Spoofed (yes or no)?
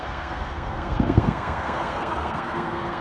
yes